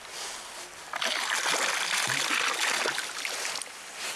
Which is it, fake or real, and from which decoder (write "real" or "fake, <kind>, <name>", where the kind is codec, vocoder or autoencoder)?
real